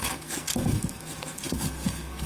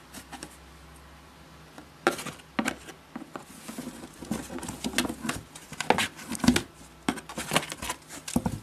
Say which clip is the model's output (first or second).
first